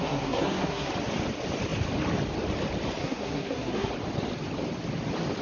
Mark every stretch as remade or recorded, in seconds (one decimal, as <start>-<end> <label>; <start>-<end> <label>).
0.0-0.9 remade; 0.9-3.0 recorded; 3.0-3.9 remade; 3.9-5.4 recorded

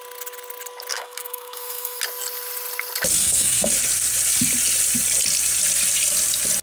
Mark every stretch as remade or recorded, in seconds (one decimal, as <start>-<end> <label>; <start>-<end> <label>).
0.0-0.9 recorded; 0.9-2.0 remade; 2.0-3.1 recorded; 3.1-3.7 remade; 3.7-6.6 recorded

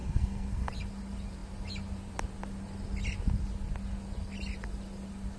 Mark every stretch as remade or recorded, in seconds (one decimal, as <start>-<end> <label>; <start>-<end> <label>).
0.0-0.7 remade; 0.7-5.4 recorded

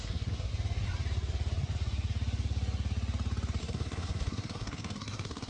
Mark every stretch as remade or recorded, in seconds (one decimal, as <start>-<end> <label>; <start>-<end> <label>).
0.0-0.5 remade; 0.5-3.6 recorded; 3.6-5.5 remade

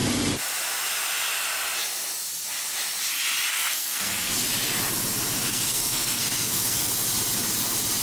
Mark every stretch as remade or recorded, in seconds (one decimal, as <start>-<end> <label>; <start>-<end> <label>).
0.0-3.5 recorded; 3.5-4.3 remade; 4.3-5.5 recorded; 5.5-6.9 remade; 6.9-8.0 recorded